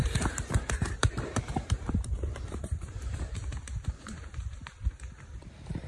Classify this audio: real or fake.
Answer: fake